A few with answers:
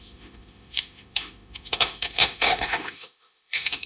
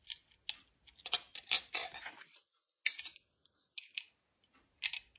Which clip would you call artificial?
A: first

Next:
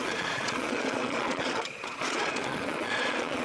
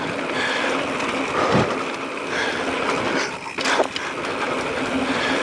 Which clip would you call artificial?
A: first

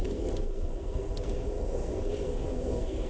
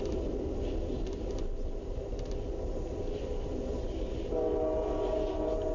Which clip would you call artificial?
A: first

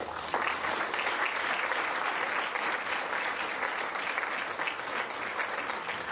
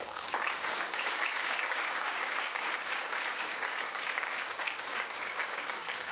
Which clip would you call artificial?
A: second